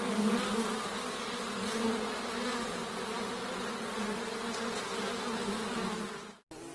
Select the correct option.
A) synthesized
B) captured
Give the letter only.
B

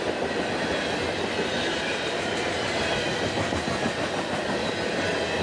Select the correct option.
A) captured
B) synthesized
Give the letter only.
A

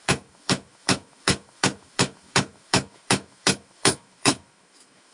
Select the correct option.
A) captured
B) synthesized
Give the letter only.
B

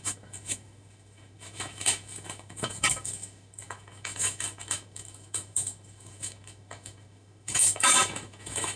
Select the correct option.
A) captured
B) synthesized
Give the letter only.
B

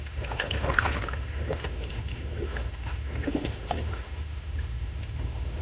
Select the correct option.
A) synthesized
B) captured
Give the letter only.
A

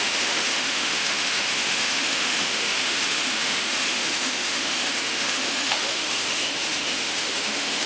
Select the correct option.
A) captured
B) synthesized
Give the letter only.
B